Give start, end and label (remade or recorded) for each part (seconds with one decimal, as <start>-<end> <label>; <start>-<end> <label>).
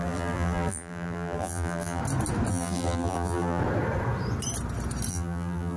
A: 0.0-2.0 remade; 2.0-2.5 recorded; 2.5-3.6 remade; 3.6-5.1 recorded; 5.1-5.8 remade